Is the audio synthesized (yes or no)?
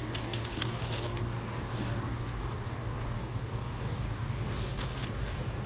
yes